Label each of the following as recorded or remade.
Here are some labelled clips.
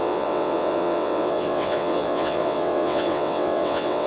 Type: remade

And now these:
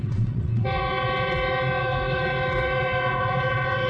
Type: remade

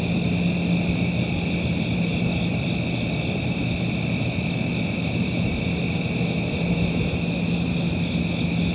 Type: recorded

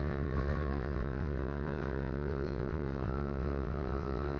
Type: remade